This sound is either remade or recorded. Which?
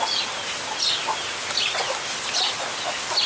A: recorded